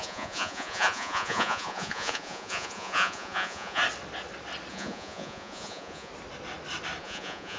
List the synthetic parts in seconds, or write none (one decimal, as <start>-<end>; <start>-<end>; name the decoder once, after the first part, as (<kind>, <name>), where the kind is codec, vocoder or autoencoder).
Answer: 0.0-3.8 (vocoder, Vocos); 4.7-6.1; 7.0-7.6